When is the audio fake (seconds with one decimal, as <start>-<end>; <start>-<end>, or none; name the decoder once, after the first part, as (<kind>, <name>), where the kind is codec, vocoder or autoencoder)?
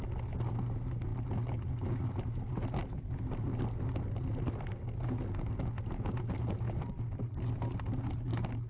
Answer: none